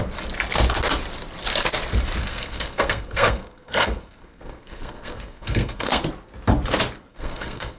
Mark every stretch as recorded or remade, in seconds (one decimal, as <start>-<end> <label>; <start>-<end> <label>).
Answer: 0.0-2.2 recorded; 2.2-6.0 remade; 6.0-7.1 recorded; 7.1-7.8 remade

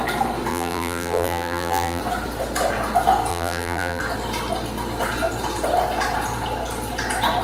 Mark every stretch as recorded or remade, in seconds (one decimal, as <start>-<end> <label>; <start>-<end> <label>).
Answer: 0.0-0.5 recorded; 0.5-2.0 remade; 2.0-3.3 recorded; 3.3-4.0 remade; 4.0-7.4 recorded